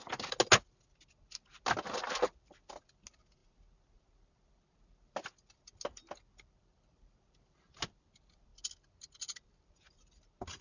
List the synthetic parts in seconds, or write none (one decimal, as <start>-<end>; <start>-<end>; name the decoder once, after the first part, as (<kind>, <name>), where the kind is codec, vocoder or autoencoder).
none